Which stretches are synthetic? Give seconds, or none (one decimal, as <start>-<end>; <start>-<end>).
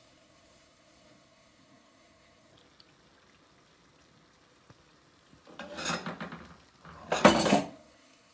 0.0-2.5; 7.5-8.3